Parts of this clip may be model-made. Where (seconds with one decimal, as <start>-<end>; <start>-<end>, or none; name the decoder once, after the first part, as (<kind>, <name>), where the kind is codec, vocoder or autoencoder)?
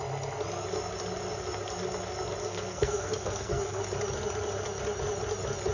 2.4-3.8 (codec, SNAC)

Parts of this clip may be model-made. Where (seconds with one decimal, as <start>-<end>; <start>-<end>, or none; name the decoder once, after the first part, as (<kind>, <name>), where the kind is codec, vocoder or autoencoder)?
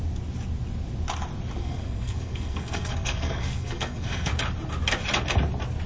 1.6-4.3 (codec, SNAC)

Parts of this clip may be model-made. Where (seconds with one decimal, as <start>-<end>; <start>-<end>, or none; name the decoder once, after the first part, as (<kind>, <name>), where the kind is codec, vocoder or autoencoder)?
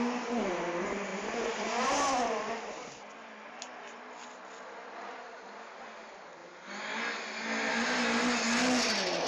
none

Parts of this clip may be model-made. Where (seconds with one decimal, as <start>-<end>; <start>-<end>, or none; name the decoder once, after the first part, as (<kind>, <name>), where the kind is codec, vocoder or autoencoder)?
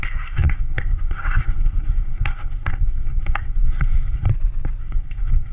0.0-4.3 (codec, SNAC); 4.8-5.5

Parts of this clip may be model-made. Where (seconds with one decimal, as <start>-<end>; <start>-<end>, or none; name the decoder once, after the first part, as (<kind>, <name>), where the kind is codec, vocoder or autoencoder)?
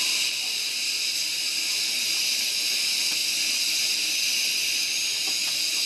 none